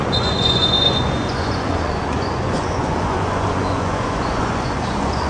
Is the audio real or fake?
fake